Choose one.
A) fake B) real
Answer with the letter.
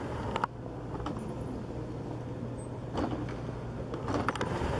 B